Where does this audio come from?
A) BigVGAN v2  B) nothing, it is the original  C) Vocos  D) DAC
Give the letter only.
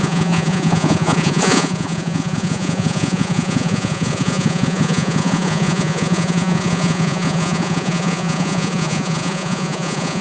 C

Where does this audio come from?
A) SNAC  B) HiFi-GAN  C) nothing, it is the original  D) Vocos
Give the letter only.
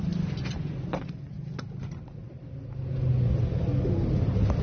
C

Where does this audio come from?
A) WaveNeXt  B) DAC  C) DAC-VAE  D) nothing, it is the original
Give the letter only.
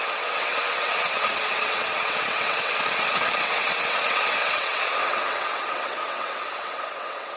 A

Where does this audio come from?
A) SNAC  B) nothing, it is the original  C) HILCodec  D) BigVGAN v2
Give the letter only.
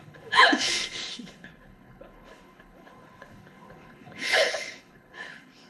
C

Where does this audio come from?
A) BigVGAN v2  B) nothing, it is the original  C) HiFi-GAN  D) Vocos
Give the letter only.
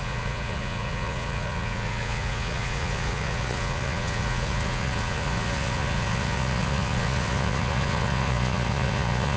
D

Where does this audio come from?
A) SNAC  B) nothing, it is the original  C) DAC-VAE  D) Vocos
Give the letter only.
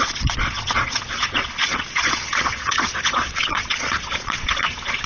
D